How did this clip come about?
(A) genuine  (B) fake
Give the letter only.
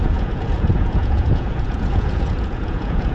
B